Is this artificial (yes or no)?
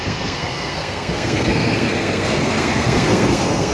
yes